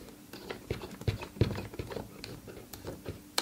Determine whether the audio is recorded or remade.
recorded